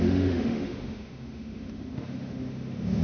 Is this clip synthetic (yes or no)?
yes